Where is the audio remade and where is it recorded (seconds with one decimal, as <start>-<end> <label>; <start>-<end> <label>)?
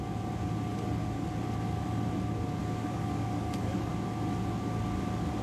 0.0-2.6 recorded; 2.6-3.9 remade; 3.9-5.4 recorded